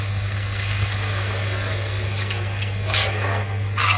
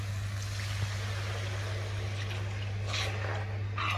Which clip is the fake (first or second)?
first